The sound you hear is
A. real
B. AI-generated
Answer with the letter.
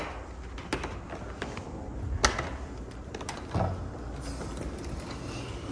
A